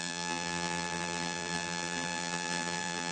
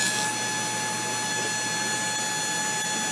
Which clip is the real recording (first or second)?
second